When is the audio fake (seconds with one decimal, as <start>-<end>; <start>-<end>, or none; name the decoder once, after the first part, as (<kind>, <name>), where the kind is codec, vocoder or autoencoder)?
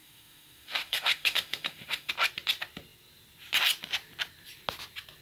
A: 0.0-2.1 (autoencoder, DAC-VAE)